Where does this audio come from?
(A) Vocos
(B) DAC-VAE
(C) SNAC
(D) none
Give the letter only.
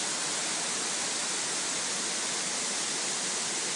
D